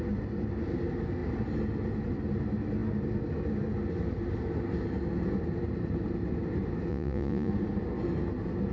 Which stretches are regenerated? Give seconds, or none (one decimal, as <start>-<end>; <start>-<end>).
6.9-7.5